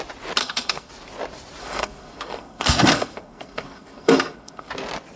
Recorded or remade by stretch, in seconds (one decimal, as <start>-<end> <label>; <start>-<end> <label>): 0.0-0.4 recorded; 0.4-0.9 remade; 0.9-1.6 recorded; 1.6-4.7 remade; 4.7-5.2 recorded